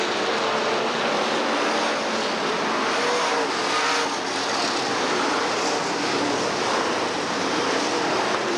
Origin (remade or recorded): recorded